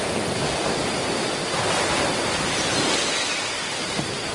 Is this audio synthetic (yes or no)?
no